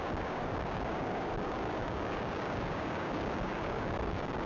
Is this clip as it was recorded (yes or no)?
no